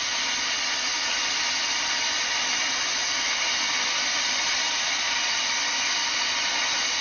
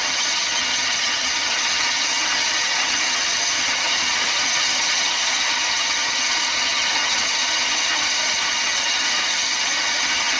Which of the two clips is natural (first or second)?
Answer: first